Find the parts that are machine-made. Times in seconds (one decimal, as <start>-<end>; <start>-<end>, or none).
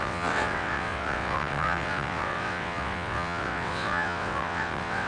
0.0-5.1